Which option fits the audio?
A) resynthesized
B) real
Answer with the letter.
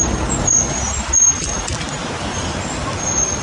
B